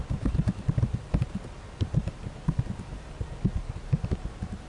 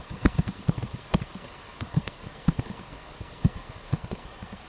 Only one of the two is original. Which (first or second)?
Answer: first